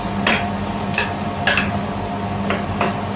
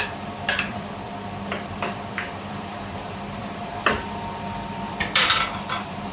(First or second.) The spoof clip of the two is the second